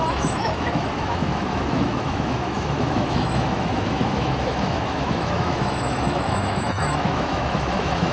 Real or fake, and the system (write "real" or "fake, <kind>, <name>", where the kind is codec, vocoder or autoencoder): fake, autoencoder, DAC-VAE